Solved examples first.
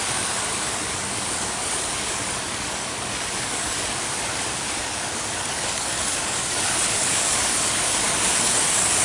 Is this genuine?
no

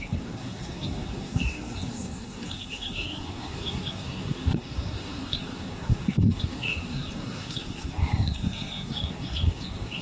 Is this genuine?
no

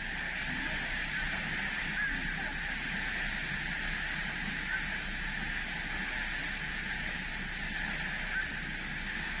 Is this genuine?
yes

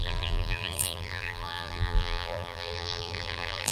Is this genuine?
no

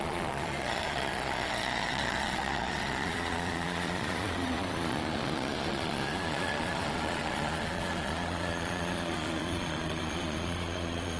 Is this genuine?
no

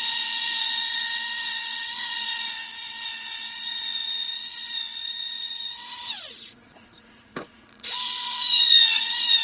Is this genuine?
no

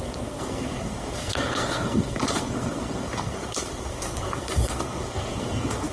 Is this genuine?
no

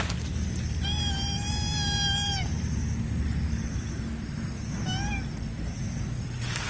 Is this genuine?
yes